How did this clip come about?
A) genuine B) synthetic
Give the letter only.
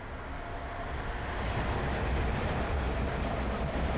A